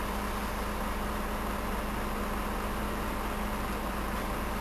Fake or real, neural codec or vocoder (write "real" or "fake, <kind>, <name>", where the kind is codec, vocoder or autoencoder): real